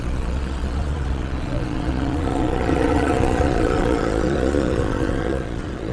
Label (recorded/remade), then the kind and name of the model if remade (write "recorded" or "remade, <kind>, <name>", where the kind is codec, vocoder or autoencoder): remade, vocoder, Vocos